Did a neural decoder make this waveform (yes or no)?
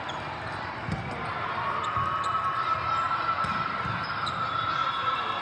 no